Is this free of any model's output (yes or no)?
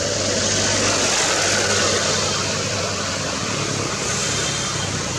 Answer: yes